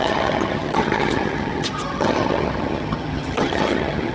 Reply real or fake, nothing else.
fake